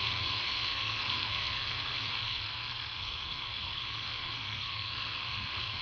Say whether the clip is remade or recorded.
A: remade